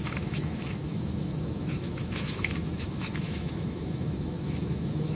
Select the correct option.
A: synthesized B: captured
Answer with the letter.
A